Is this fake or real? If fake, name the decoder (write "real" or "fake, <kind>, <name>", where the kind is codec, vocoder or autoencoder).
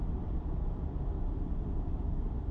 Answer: real